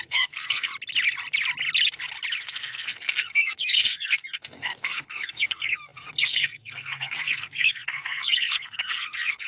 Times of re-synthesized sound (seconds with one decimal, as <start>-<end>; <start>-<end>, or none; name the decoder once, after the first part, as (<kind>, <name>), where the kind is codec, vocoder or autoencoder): 0.0-0.7 (codec, SNAC); 2.4-9.5

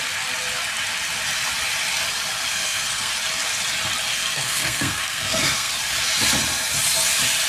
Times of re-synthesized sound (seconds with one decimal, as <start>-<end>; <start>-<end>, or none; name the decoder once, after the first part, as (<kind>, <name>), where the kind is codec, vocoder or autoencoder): 2.5-3.1 (codec, SNAC); 4.1-5.7

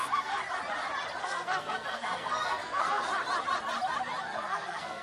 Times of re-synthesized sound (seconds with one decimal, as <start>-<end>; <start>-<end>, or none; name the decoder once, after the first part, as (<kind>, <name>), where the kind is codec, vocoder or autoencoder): 0.0-0.4 (codec, SNAC); 1.2-3.1; 4.2-5.0

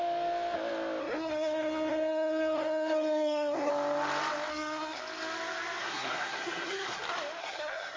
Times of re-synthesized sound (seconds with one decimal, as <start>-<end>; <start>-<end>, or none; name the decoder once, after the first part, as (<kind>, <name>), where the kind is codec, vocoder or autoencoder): 1.0-3.7 (codec, SNAC); 4.5-5.0; 5.8-7.0; 7.4-8.0

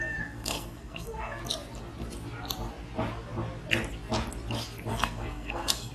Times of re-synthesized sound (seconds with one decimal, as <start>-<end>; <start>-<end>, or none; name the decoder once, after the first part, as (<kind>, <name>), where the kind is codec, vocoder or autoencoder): 0.0-1.4 (codec, SNAC); 4.9-5.9

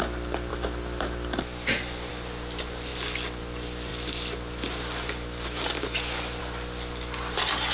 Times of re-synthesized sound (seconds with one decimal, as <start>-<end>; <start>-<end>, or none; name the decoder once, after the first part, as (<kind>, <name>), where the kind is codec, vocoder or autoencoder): none

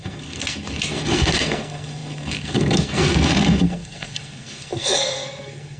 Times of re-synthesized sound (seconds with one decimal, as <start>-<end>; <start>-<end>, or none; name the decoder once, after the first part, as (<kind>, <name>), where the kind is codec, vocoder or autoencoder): 0.0-5.8 (codec, SNAC)